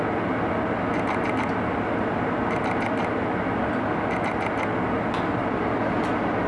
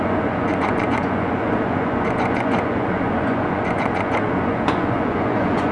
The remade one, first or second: second